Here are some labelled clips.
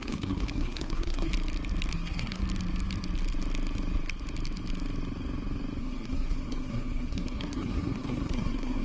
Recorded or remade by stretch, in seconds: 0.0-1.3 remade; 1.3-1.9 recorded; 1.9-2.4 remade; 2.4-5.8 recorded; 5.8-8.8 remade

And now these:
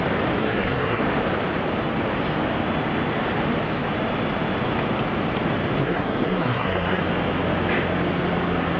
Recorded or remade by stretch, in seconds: 0.0-0.4 recorded; 0.4-1.0 remade; 1.0-5.8 recorded; 5.8-7.0 remade; 7.0-8.8 recorded

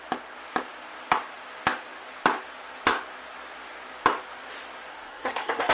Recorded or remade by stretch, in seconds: 0.0-4.9 recorded; 4.9-5.7 remade

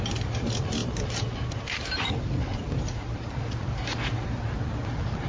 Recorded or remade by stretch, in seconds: 0.0-5.3 recorded

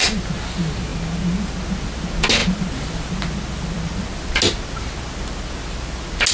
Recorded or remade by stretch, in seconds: 0.0-6.3 recorded

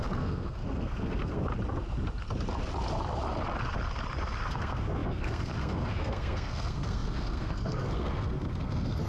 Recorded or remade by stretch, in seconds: 0.0-1.5 remade; 1.5-4.5 recorded; 4.5-9.1 remade

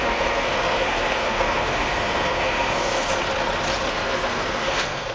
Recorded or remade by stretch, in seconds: 0.0-3.1 remade; 3.1-3.9 recorded; 3.9-5.1 remade